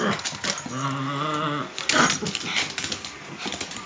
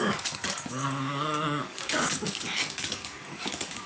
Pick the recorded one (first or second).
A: first